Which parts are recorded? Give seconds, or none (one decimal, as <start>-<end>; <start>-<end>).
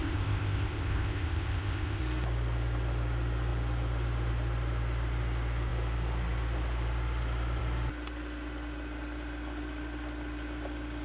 2.0-11.0